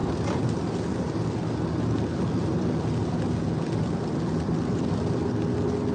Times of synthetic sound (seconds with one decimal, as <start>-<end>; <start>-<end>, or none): none